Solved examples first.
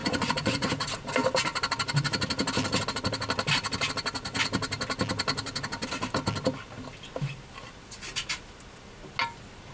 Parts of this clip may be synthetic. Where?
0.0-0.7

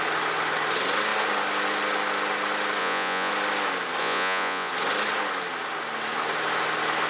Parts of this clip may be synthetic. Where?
2.8-3.3; 4.0-4.7